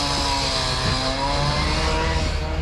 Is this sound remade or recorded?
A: recorded